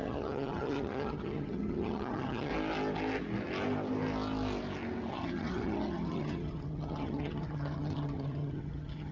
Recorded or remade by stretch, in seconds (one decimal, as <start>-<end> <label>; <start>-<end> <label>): 0.0-2.5 remade; 2.5-5.1 recorded; 5.1-9.1 remade